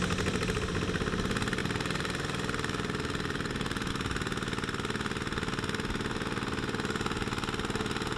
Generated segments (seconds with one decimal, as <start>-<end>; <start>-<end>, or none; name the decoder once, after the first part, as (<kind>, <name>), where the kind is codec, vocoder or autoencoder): 1.6-3.9 (vocoder, BigVGAN v2)